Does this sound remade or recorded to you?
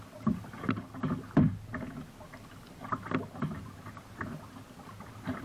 recorded